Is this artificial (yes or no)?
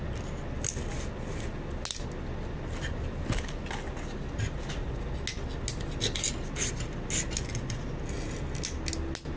no